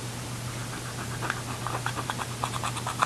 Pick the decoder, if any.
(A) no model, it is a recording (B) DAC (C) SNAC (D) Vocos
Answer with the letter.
A